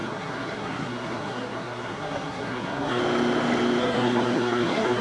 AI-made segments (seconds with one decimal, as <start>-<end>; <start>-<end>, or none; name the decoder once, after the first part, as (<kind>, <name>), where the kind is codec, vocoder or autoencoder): 0.0-3.0 (codec, SNAC); 3.8-5.0